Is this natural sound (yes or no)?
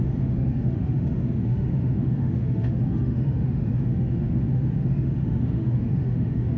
no